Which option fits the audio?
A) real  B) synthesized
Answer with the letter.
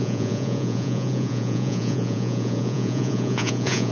B